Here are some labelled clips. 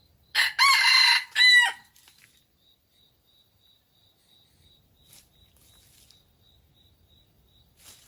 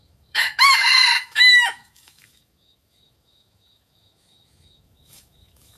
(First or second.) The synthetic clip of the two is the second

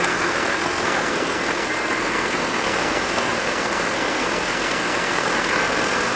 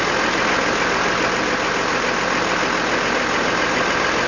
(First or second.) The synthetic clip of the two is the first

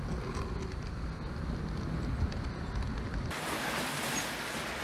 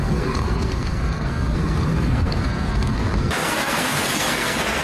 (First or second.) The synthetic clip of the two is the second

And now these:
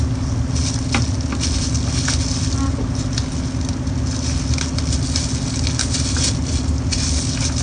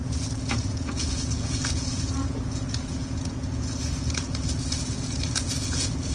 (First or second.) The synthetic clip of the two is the second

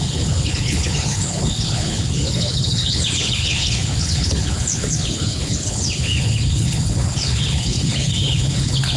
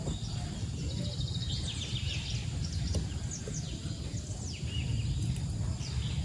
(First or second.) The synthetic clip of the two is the first